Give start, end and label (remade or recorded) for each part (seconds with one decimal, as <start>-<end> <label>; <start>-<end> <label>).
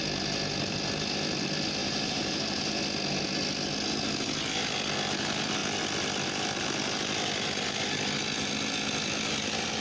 0.0-1.8 recorded; 1.8-2.7 remade; 2.7-9.8 recorded